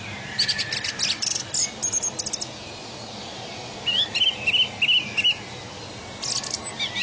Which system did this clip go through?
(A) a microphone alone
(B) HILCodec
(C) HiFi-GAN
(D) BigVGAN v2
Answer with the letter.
A